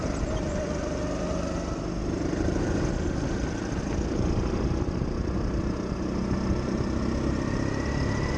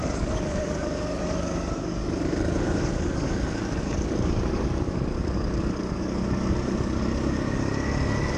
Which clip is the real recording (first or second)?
first